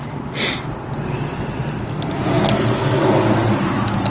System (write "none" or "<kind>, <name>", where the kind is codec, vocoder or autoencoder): none